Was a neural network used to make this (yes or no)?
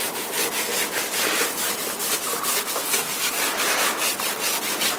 no